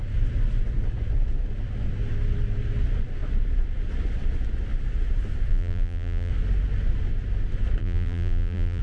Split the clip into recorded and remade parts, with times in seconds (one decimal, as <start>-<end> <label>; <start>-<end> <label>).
0.0-5.5 recorded; 5.5-6.3 remade; 6.3-7.8 recorded; 7.8-8.8 remade

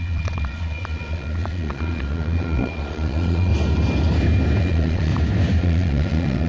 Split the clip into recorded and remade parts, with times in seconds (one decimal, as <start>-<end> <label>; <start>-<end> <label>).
0.0-3.5 remade; 3.5-4.6 recorded; 4.6-5.1 remade; 5.1-5.6 recorded; 5.6-6.5 remade

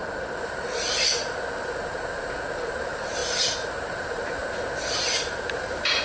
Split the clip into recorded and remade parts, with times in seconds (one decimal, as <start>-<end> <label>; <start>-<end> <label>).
0.0-2.8 recorded; 2.8-3.2 remade; 3.2-3.9 recorded; 3.9-4.4 remade; 4.4-5.2 recorded; 5.2-6.0 remade

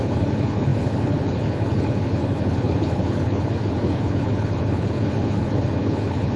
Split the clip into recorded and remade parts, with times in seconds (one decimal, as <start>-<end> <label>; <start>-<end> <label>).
0.0-6.4 remade

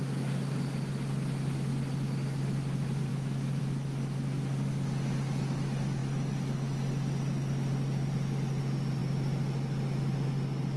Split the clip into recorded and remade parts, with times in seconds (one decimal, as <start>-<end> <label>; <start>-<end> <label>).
0.0-3.1 recorded; 3.1-3.6 remade; 3.6-10.8 recorded

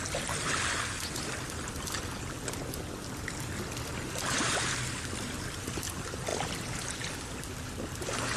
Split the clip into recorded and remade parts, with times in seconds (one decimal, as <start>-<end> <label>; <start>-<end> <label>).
0.0-8.4 recorded

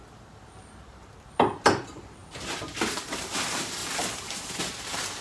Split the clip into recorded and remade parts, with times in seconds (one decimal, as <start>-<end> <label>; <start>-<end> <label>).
0.0-3.8 remade; 3.8-4.6 recorded; 4.6-5.2 remade